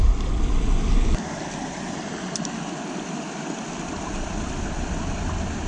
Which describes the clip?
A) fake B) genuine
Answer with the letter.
B